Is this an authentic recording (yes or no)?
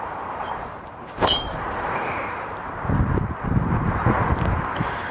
no